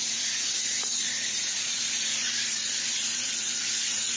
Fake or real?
fake